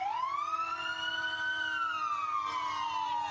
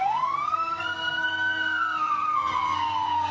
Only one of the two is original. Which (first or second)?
first